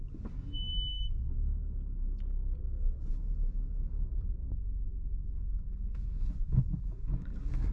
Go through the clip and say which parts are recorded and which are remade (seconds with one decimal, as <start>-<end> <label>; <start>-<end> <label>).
0.0-1.6 remade; 1.6-3.1 recorded; 3.1-7.7 remade